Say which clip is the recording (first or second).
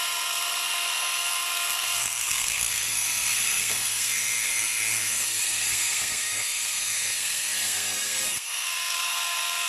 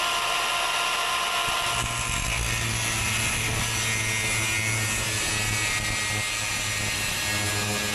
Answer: second